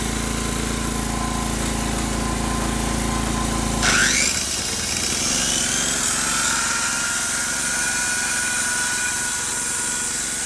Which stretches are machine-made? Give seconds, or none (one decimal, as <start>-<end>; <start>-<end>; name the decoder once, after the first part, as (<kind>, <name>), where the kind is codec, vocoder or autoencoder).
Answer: none